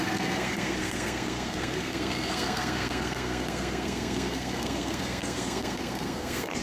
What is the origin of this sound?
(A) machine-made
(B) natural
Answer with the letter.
A